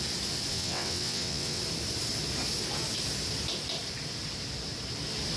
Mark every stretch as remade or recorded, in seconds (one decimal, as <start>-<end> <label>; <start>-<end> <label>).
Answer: 0.0-0.5 recorded; 0.5-1.6 remade; 1.6-5.4 recorded